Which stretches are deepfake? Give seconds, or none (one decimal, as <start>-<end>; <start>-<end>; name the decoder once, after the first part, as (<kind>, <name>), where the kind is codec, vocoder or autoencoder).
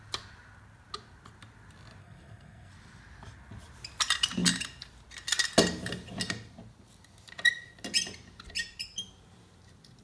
2.0-2.7 (codec, SNAC)